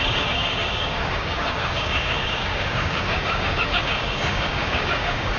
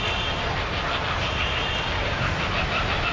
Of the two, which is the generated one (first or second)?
first